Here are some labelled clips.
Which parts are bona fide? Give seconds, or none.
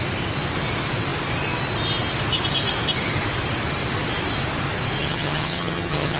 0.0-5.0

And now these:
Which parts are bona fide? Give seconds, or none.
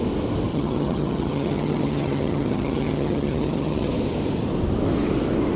0.0-0.5; 3.9-5.6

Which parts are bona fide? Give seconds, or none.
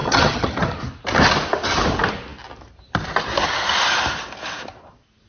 0.8-5.3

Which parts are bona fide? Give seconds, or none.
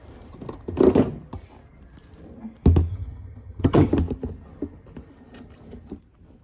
0.0-2.9; 3.9-6.4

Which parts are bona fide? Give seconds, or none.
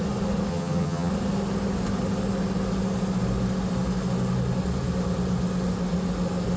0.0-0.5; 1.1-6.6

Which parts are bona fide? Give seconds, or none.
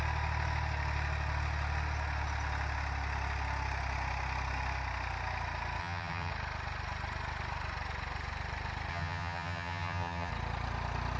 0.0-5.8; 6.3-8.9; 10.3-11.2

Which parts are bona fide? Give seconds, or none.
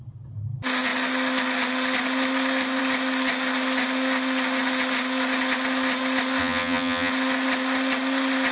0.0-6.4; 7.1-8.5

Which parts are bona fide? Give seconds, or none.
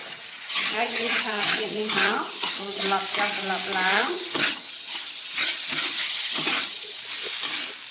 2.8-3.9; 7.0-7.9